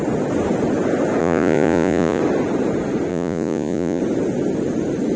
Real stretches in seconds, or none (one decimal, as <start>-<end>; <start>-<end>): 0.0-1.2; 2.2-3.1; 4.0-5.2